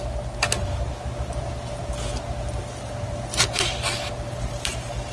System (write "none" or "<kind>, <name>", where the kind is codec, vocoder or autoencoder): none